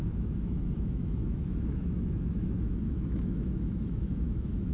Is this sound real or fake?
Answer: fake